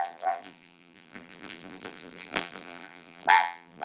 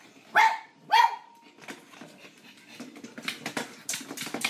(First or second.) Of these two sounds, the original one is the second